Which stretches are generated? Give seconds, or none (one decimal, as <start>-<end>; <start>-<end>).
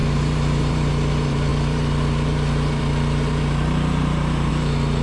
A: 0.0-5.0